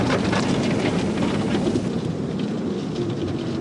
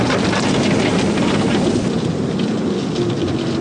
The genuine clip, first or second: second